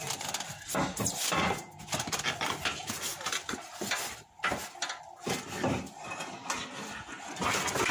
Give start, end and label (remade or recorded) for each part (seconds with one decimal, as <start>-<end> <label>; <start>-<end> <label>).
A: 0.0-2.8 remade; 2.8-5.5 recorded; 5.5-7.9 remade